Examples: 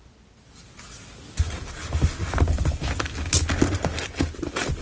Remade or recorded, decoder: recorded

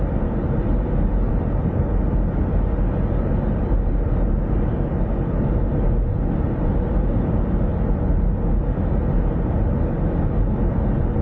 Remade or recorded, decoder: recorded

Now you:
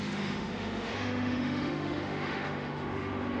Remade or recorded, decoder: remade, autoencoder, DAC-VAE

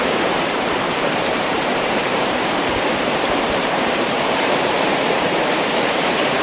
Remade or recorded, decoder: remade, vocoder, BigVGAN v2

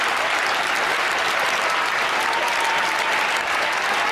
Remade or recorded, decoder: recorded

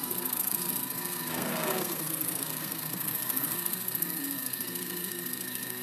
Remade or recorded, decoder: remade, codec, SNAC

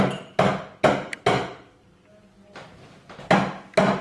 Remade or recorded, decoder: recorded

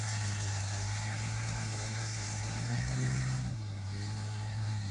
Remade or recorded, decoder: remade, codec, SNAC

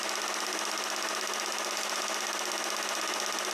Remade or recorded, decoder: recorded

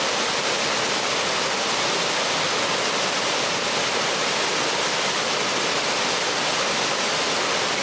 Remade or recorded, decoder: recorded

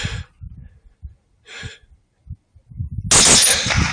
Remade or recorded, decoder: recorded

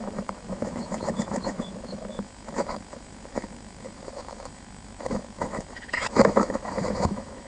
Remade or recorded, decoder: remade, autoencoder, DAC-VAE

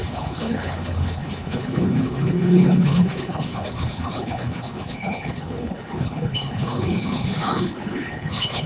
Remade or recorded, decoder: remade, codec, HILCodec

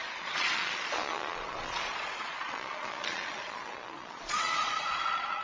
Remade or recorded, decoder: remade, vocoder, Vocos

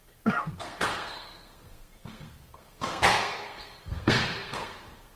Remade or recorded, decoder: remade, codec, SNAC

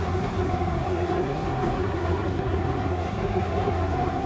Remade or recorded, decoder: remade, codec, SNAC